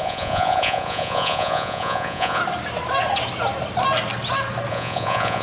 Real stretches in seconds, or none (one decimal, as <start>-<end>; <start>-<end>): 2.4-4.7